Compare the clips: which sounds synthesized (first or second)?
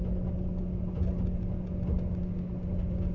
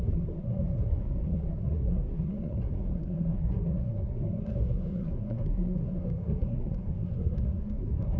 second